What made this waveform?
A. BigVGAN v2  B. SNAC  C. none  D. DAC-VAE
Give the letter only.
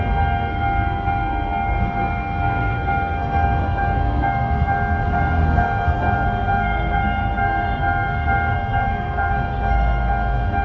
B